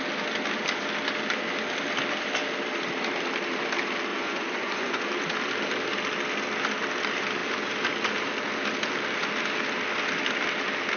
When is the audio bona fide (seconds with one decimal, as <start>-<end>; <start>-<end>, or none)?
0.0-4.1; 5.0-11.0